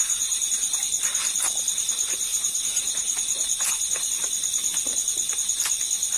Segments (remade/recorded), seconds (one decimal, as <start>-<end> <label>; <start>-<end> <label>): 0.0-0.8 remade; 0.8-2.3 recorded; 2.3-4.1 remade; 4.1-6.2 recorded